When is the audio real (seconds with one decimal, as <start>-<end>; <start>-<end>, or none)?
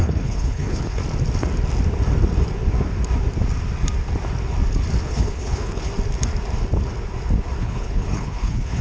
1.0-5.0; 5.9-7.6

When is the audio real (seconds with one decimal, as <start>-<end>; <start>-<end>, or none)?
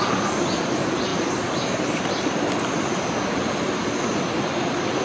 0.0-5.0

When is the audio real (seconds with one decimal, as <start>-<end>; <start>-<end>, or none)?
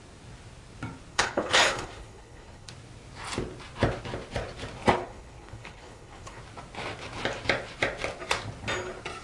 0.0-1.1; 2.7-5.0; 6.4-9.2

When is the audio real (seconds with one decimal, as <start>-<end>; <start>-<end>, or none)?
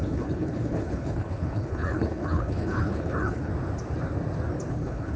3.5-4.7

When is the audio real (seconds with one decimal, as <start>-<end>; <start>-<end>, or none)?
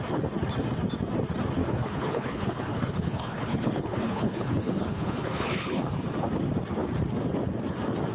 0.0-1.6; 5.9-8.1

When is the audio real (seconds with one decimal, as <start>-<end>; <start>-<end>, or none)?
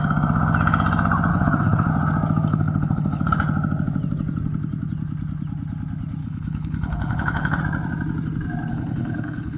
0.0-1.3; 1.9-2.5; 3.3-6.2; 7.6-8.7